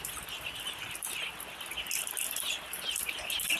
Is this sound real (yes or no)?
yes